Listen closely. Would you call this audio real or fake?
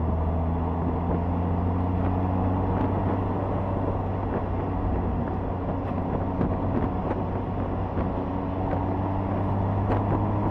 real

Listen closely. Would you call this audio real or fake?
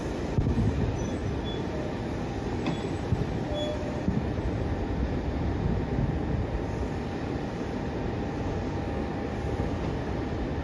real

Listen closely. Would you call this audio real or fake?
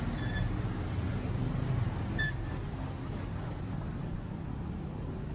real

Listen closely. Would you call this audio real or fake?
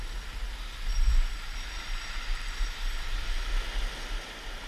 real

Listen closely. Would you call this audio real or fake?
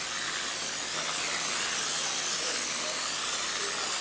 real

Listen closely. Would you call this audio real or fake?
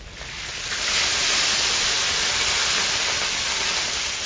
real